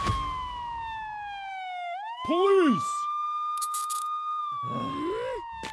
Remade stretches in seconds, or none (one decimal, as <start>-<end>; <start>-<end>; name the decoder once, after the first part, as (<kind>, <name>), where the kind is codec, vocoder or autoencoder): 1.5-4.4 (autoencoder, DAC-VAE)